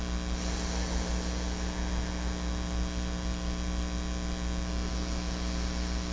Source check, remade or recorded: recorded